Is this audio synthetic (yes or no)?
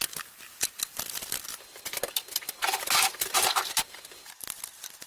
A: no